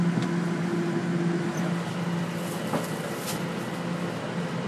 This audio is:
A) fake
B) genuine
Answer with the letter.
B